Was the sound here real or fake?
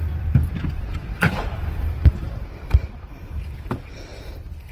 fake